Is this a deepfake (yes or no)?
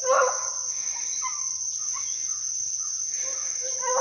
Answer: no